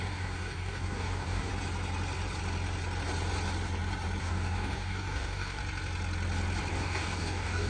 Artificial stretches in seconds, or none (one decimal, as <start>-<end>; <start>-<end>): 0.0-1.5; 4.2-5.6; 6.7-7.7